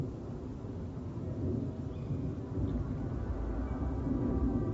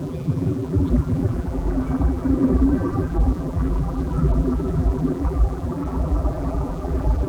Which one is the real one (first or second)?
first